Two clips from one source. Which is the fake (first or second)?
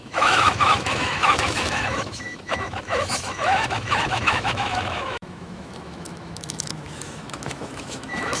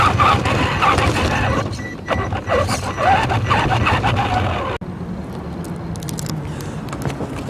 first